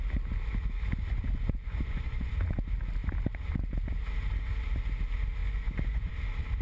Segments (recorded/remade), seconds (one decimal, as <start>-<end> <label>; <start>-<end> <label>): 0.0-1.1 recorded; 1.1-2.3 remade; 2.3-5.4 recorded; 5.4-6.1 remade; 6.1-6.6 recorded